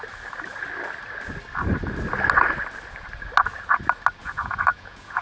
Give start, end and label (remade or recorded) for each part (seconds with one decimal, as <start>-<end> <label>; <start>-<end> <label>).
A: 0.0-4.2 recorded; 4.2-5.2 remade